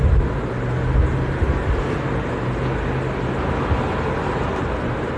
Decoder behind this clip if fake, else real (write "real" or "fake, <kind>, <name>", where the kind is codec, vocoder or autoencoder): real